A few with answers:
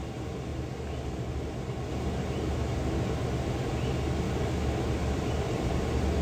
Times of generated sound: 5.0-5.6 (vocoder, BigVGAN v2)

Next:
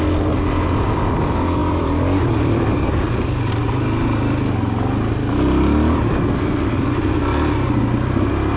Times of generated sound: 1.6-3.6 (vocoder, BigVGAN v2)

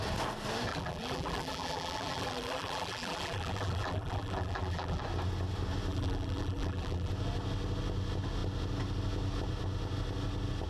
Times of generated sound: 0.7-5.0 (vocoder, BigVGAN v2); 5.9-7.1

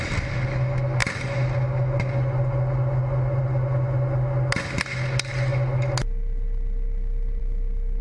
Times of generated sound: none

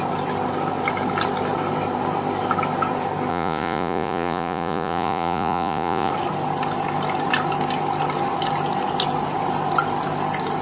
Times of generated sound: 3.3-6.1 (vocoder, Vocos)